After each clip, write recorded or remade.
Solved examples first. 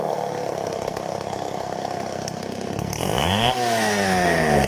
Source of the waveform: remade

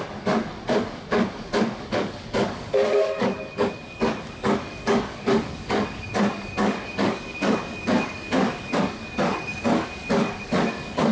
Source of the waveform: remade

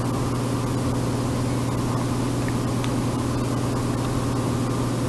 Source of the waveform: recorded